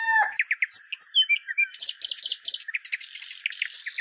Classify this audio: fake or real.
real